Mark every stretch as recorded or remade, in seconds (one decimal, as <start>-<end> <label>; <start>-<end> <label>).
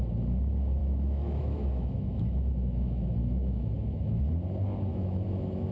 0.0-0.8 recorded; 0.8-4.2 remade; 4.2-4.9 recorded; 4.9-5.7 remade